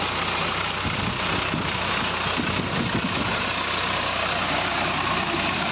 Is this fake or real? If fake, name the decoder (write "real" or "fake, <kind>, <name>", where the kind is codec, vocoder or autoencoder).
real